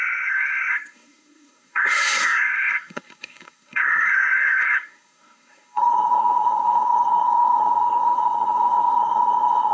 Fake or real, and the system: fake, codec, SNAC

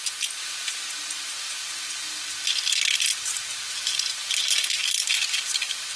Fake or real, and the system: real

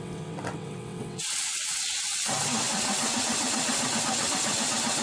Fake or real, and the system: fake, vocoder, WaveNeXt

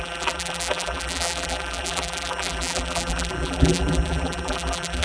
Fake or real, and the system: fake, vocoder, BigVGAN v2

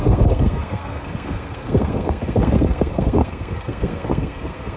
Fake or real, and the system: fake, codec, SNAC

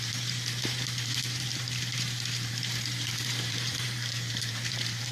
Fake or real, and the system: fake, vocoder, BigVGAN v2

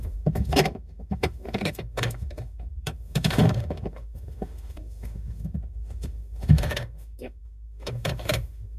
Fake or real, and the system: fake, autoencoder, DAC-VAE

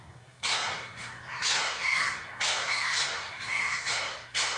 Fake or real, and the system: fake, codec, SNAC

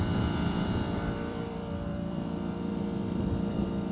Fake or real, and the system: fake, vocoder, BigVGAN v2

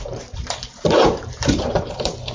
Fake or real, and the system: fake, vocoder, BigVGAN v2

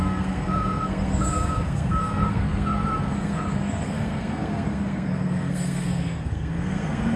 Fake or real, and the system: fake, codec, SNAC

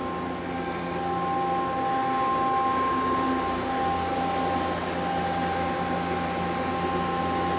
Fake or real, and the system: real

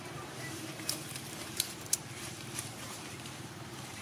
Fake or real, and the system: fake, vocoder, BigVGAN v2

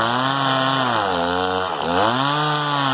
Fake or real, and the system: real